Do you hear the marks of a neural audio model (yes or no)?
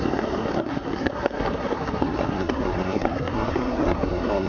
yes